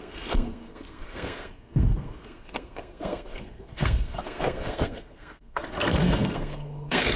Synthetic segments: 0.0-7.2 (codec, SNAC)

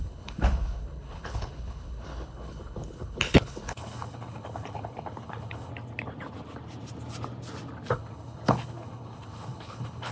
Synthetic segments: 0.0-5.7 (codec, HILCodec); 7.9-10.1

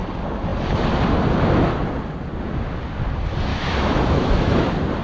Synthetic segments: 3.5-4.6 (autoencoder, DAC-VAE)

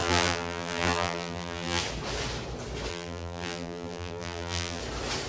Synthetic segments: 0.0-1.8 (vocoder, BigVGAN v2); 2.9-4.8

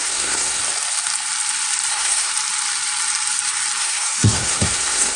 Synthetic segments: 0.0-0.6 (codec, SNAC); 1.9-2.3; 3.8-5.2

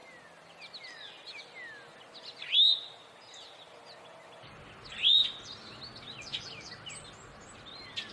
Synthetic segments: none